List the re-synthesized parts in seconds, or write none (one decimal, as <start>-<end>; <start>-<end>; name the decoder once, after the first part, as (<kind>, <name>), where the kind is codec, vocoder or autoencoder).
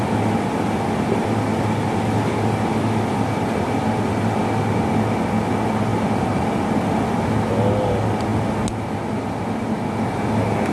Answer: none